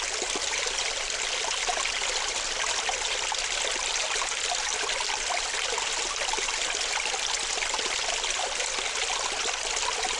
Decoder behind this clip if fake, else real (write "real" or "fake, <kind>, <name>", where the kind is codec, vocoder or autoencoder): real